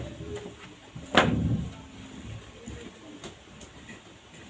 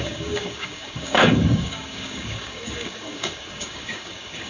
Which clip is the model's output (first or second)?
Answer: second